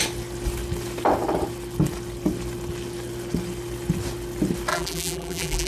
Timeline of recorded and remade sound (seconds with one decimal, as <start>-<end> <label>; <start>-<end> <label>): 0.0-4.7 recorded; 4.7-5.7 remade